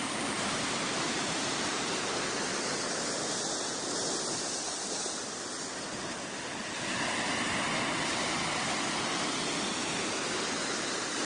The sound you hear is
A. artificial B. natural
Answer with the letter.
B